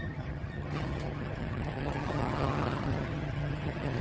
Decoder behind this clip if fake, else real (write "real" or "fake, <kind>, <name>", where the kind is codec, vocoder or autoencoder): fake, vocoder, HiFi-GAN